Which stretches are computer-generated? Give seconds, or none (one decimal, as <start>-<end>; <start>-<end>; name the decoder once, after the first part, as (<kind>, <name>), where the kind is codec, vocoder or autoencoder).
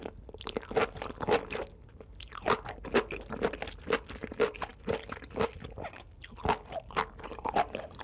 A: none